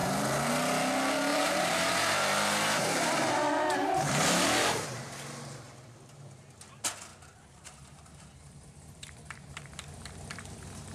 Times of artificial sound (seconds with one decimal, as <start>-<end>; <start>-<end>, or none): 1.3-5.9; 7.1-9.7